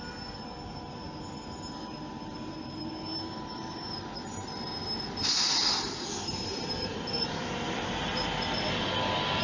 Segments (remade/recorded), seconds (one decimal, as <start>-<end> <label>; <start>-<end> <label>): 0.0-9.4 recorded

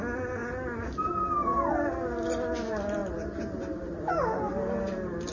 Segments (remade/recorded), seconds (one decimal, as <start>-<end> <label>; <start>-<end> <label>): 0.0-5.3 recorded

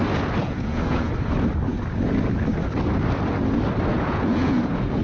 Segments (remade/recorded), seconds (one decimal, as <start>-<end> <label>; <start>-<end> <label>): 0.0-0.4 recorded; 0.4-1.1 remade; 1.1-3.9 recorded; 3.9-5.0 remade

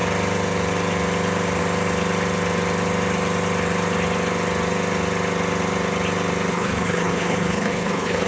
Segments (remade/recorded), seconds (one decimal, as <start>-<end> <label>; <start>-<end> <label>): 0.0-6.5 recorded; 6.5-8.3 remade